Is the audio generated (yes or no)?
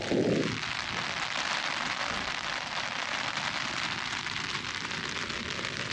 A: yes